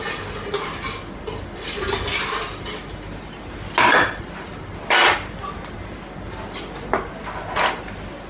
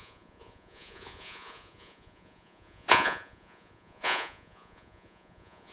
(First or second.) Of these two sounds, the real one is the first